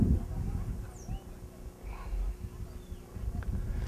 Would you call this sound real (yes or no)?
yes